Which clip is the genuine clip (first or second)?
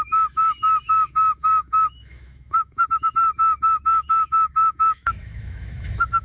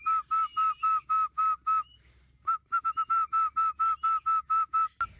second